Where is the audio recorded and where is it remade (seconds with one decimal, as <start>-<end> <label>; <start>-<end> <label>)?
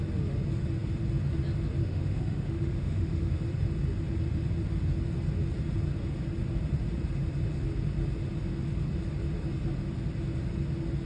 0.0-1.8 recorded; 1.8-3.3 remade; 3.3-11.1 recorded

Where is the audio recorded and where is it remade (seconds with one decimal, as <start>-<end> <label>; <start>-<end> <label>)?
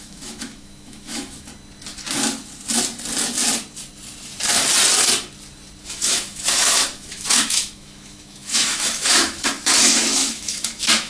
0.0-1.5 remade; 1.5-5.8 recorded; 5.8-11.1 remade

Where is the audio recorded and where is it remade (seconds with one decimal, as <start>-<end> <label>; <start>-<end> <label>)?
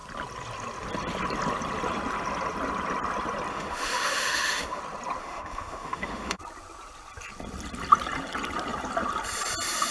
0.0-3.5 recorded; 3.5-4.8 remade; 4.8-5.2 recorded; 5.2-6.4 remade; 6.4-9.9 recorded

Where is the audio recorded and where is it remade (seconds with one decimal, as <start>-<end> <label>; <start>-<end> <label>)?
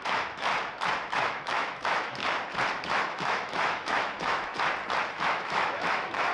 0.0-0.5 remade; 0.5-1.1 recorded; 1.1-2.2 remade; 2.2-2.8 recorded; 2.8-4.5 remade; 4.5-5.1 recorded; 5.1-6.3 remade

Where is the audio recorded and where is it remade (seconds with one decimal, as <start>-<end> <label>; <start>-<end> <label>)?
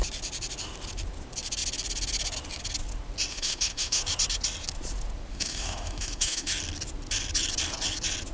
0.0-3.3 recorded; 3.3-4.0 remade; 4.0-5.3 recorded; 5.3-6.5 remade; 6.5-8.3 recorded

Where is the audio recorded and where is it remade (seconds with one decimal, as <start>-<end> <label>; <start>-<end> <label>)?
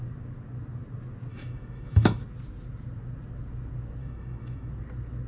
0.0-1.3 recorded; 1.3-2.2 remade; 2.2-4.0 recorded; 4.0-4.7 remade; 4.7-5.3 recorded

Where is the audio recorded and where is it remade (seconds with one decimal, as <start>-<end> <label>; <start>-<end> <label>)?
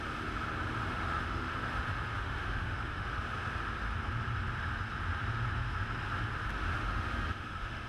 0.0-0.9 recorded; 0.9-1.7 remade; 1.7-2.1 recorded; 2.1-3.1 remade; 3.1-6.7 recorded; 6.7-7.9 remade